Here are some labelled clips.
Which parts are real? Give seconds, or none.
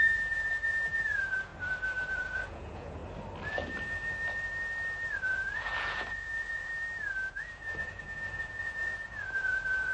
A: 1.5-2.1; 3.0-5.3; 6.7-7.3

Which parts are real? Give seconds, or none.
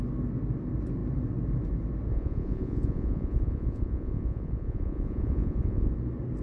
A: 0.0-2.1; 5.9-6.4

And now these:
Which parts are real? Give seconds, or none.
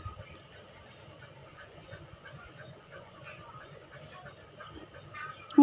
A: 0.0-1.4; 3.9-5.6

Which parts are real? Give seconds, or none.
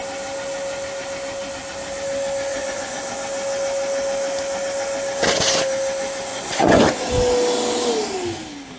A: 0.0-2.5; 3.0-6.3; 7.1-8.8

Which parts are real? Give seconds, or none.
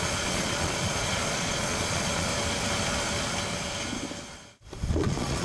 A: 2.3-4.9